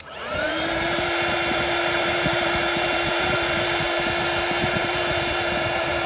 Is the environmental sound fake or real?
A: fake